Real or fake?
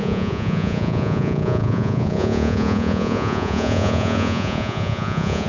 fake